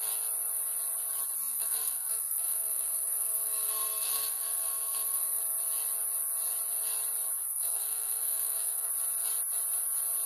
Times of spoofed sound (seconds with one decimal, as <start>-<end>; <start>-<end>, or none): 1.5-5.4; 7.4-8.9